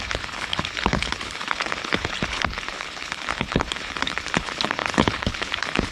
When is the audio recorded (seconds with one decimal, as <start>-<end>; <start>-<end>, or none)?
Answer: none